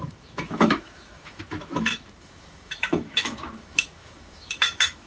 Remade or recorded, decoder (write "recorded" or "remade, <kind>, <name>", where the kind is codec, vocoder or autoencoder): remade, autoencoder, DAC-VAE